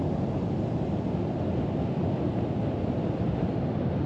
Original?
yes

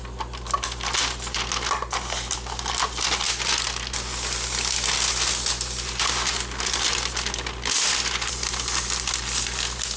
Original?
yes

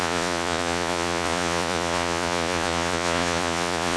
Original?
no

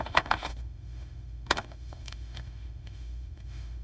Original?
no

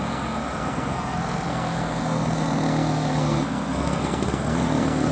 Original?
no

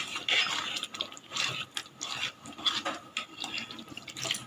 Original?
yes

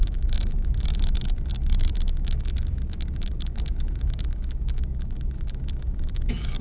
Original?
no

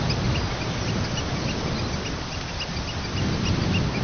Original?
yes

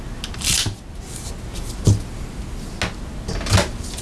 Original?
yes